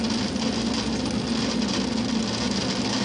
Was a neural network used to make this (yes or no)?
no